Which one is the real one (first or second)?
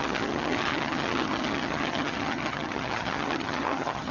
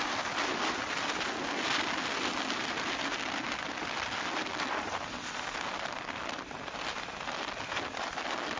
second